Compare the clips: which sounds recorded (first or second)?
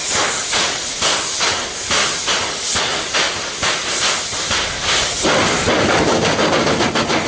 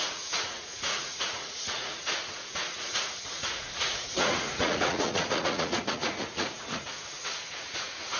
first